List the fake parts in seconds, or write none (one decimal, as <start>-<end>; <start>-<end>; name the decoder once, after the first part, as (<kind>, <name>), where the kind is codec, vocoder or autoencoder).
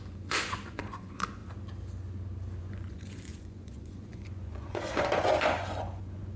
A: 0.0-1.4 (vocoder, Vocos); 2.6-6.4